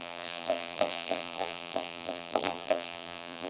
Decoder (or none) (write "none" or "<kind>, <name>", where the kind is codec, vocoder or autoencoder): vocoder, BigVGAN v2